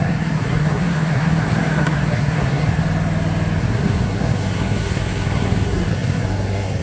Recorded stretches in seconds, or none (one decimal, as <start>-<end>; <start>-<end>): 2.8-3.6